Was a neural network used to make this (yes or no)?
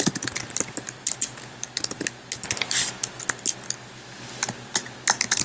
no